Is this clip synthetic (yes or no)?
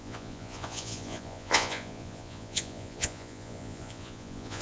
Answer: yes